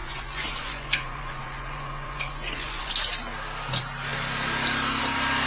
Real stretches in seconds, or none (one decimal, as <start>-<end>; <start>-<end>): 2.9-5.5